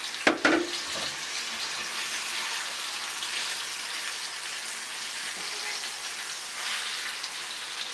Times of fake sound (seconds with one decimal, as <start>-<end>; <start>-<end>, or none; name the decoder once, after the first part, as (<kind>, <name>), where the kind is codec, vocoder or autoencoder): none